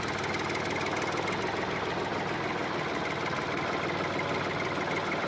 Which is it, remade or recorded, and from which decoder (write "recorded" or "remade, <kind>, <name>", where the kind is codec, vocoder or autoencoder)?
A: recorded